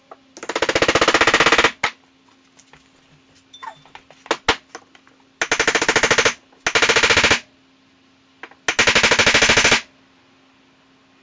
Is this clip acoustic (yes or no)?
yes